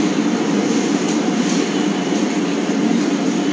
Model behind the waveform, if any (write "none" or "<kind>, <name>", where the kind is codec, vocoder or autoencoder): vocoder, BigVGAN v2